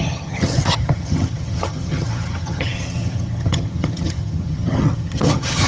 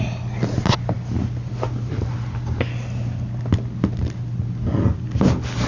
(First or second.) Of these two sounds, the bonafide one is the second